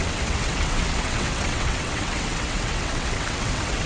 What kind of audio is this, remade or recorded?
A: remade